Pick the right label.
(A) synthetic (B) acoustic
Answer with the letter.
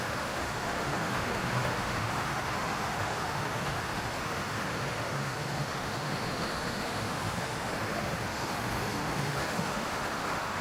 A